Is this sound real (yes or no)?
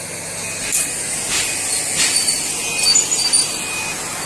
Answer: yes